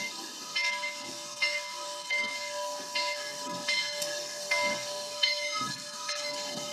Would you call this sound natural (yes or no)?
no